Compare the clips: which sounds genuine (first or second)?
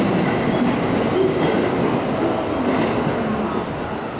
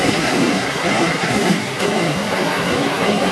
first